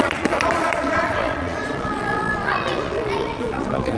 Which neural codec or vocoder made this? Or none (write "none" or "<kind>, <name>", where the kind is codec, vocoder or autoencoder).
vocoder, Vocos